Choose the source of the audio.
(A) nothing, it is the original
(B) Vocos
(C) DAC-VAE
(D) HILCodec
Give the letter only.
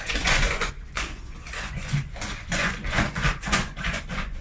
B